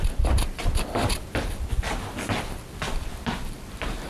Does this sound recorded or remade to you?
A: recorded